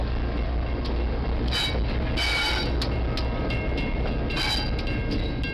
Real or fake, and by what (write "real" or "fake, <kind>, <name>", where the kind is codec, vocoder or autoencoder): real